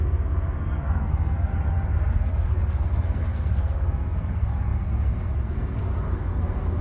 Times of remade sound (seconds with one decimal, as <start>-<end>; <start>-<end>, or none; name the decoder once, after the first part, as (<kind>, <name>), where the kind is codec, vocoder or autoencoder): 0.0-1.5 (codec, SNAC); 2.1-6.8